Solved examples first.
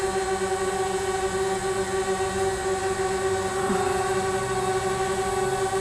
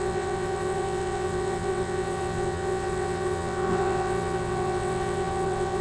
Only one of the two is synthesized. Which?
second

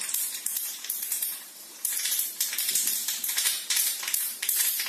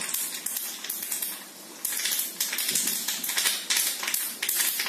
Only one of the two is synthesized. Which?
first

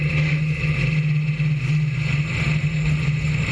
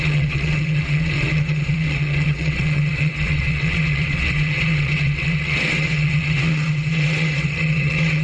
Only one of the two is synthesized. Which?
second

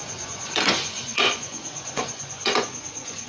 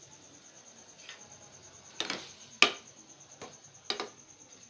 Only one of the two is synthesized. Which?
first